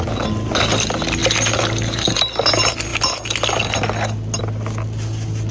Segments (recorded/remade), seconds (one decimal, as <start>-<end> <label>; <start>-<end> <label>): 0.0-5.5 recorded